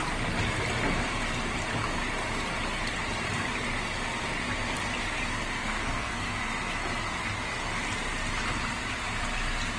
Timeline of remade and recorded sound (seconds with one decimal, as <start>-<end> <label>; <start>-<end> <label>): 0.0-5.6 recorded; 5.6-6.3 remade; 6.3-9.8 recorded